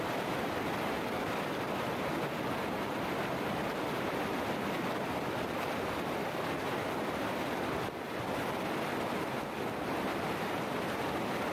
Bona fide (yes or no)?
yes